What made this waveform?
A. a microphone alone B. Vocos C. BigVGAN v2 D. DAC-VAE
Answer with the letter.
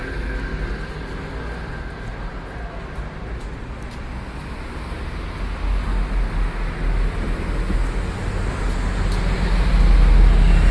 A